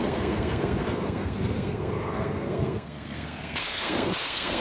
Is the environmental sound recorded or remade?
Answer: remade